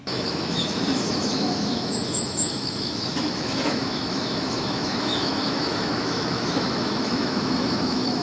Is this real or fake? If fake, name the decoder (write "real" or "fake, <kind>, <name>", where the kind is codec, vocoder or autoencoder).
fake, autoencoder, DAC-VAE